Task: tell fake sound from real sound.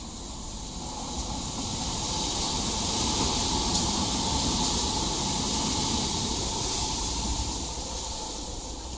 fake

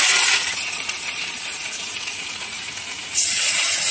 fake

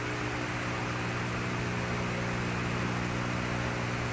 real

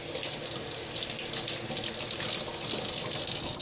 real